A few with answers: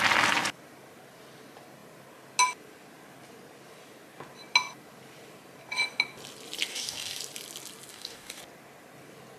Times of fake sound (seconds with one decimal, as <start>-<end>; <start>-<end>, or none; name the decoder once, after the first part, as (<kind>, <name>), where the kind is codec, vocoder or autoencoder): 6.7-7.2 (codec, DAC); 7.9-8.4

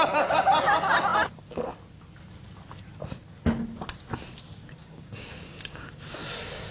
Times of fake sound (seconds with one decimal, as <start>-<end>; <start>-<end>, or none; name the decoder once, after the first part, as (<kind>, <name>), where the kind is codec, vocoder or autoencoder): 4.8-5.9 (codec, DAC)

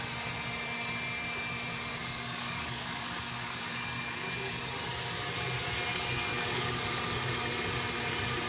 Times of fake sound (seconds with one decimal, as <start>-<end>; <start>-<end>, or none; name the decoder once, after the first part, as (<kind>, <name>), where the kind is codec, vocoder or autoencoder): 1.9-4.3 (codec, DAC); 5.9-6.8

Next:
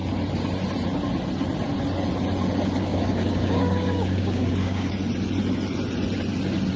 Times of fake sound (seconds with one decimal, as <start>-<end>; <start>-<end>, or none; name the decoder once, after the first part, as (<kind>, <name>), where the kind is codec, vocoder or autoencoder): 2.9-4.9 (codec, DAC)